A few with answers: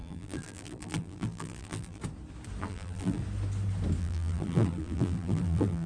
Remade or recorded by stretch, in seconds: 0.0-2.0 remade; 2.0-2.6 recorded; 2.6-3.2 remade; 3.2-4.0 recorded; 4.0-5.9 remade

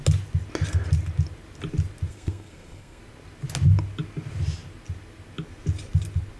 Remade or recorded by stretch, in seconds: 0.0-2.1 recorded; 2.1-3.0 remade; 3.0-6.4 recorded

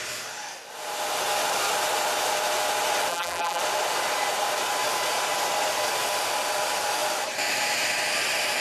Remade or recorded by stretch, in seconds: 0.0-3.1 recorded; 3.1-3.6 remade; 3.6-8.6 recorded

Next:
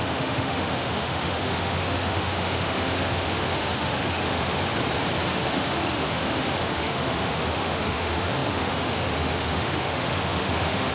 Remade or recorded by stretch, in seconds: 0.0-4.6 remade; 4.6-5.3 recorded; 5.3-10.9 remade

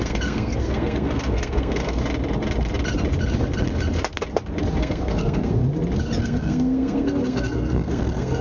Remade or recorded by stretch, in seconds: 0.0-2.0 remade; 2.0-4.8 recorded; 4.8-5.6 remade; 5.6-6.2 recorded; 6.2-8.4 remade

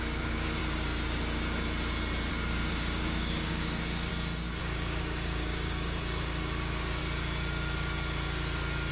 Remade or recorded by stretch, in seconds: 0.0-0.6 remade; 0.6-2.3 recorded; 2.3-4.1 remade; 4.1-4.6 recorded; 4.6-7.0 remade; 7.0-8.9 recorded